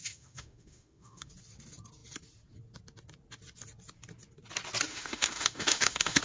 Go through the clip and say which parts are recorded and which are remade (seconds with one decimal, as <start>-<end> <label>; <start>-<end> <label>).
0.0-1.3 remade; 1.3-4.9 recorded; 4.9-6.2 remade